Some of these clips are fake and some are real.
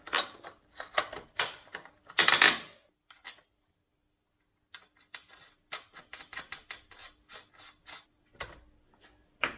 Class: real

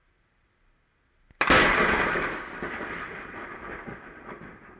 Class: real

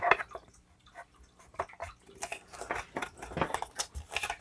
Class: real